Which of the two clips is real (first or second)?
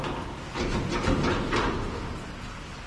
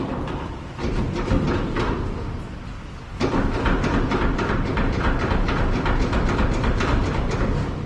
first